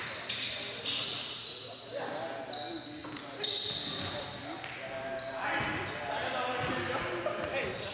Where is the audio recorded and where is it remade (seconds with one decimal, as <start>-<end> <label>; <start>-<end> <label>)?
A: 0.0-1.0 recorded; 1.0-1.9 remade; 1.9-7.9 recorded